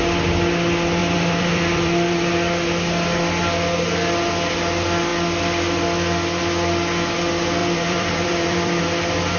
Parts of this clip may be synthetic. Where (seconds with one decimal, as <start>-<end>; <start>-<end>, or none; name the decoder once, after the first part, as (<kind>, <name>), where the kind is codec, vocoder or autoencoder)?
1.0-2.3 (vocoder, BigVGAN v2); 7.6-8.8